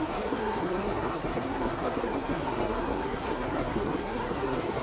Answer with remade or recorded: remade